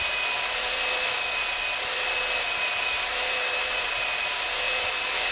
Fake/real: real